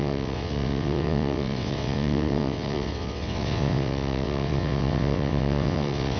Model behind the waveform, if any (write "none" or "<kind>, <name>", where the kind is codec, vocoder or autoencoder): vocoder, WaveNeXt